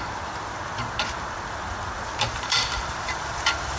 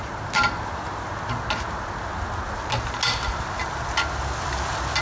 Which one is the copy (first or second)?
first